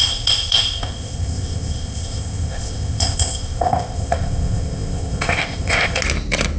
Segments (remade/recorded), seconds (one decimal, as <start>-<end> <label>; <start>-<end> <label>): 0.0-6.0 remade; 6.0-6.6 recorded